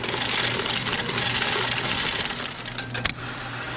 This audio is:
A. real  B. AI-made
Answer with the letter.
A